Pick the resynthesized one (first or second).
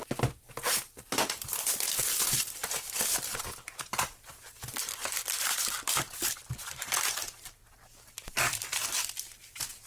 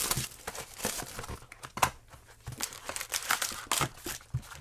first